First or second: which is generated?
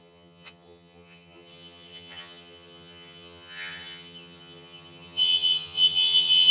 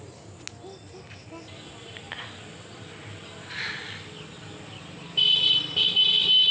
first